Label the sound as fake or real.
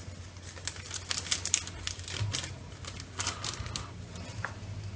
real